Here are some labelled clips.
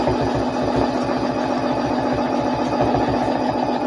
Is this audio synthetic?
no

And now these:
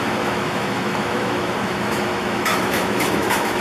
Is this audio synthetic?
yes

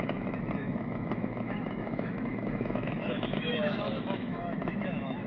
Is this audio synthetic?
yes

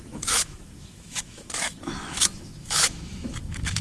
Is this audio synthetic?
yes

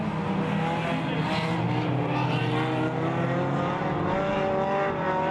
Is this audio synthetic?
no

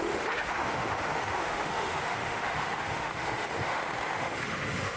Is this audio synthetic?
yes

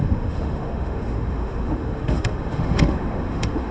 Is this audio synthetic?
yes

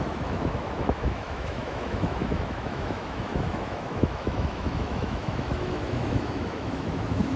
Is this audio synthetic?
yes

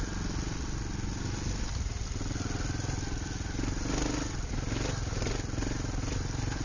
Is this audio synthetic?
no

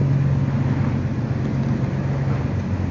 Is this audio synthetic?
no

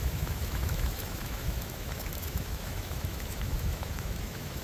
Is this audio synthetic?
yes